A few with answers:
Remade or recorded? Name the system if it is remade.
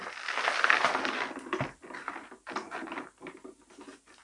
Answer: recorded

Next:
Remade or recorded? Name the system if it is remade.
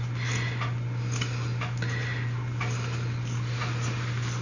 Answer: recorded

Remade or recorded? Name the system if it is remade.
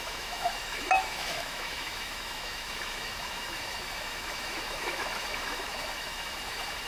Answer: remade, autoencoder, DAC-VAE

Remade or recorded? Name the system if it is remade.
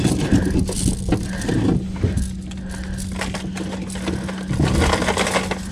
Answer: recorded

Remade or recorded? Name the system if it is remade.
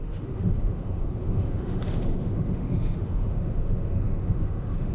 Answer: remade, autoencoder, DAC-VAE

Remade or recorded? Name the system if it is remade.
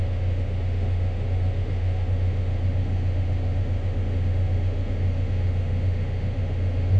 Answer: remade, autoencoder, DAC-VAE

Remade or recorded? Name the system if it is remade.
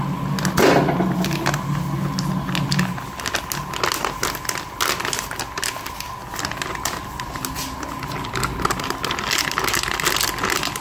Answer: recorded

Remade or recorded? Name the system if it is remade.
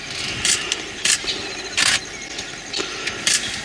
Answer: recorded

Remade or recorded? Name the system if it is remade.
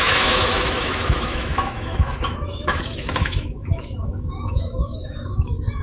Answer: remade, autoencoder, DAC-VAE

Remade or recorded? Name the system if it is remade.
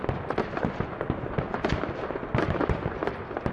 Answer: recorded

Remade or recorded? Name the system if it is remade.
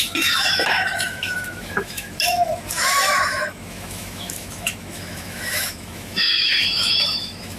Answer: remade, autoencoder, DAC-VAE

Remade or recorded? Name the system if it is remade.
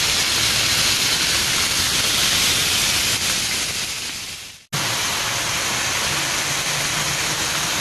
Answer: recorded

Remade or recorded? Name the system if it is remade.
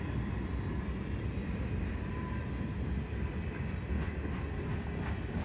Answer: recorded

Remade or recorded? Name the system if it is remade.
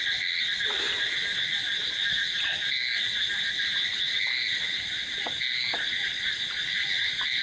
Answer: recorded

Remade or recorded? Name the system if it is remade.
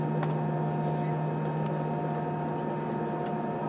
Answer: recorded